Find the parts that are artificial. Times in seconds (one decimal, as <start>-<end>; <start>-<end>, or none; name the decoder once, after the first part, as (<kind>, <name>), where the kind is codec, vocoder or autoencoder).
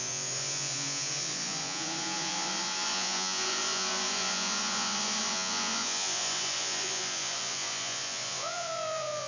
0.0-9.3 (vocoder, Vocos)